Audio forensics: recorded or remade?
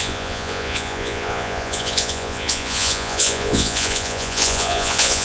remade